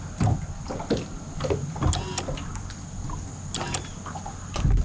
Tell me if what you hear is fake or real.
real